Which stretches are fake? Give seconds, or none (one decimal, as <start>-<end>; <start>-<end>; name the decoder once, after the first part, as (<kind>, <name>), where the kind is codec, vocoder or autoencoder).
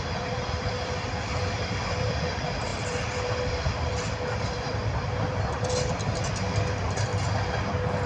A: 0.0-7.1 (vocoder, BigVGAN v2)